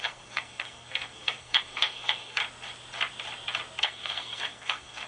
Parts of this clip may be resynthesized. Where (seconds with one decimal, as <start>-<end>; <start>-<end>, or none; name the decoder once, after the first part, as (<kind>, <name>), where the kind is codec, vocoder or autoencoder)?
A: 0.0-2.4 (codec, SNAC); 3.8-5.1